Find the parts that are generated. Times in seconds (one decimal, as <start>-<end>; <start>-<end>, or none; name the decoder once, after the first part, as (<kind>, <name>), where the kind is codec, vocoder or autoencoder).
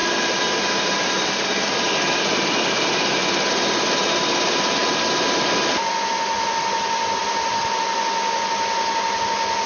0.0-4.2 (vocoder, BigVGAN v2); 4.8-5.9; 7.2-7.8